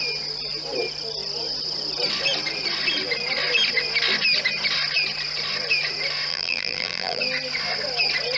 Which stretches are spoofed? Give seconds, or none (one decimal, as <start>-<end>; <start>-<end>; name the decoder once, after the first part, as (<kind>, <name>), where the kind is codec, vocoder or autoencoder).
6.3-7.2 (vocoder, BigVGAN v2)